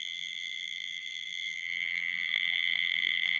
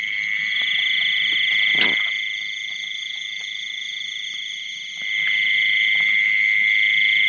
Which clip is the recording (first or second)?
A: second